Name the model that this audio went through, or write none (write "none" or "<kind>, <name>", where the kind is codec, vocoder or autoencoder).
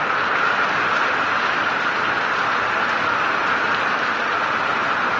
none